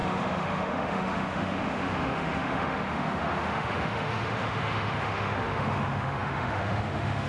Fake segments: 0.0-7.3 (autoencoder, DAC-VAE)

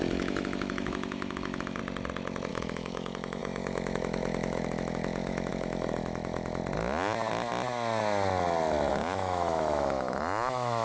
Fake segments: 0.0-1.8 (autoencoder, DAC-VAE); 2.5-6.6; 8.9-10.8

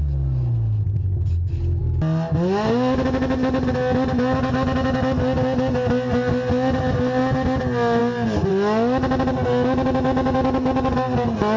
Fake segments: none

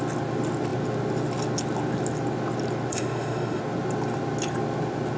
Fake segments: 2.9-3.6 (autoencoder, DAC-VAE)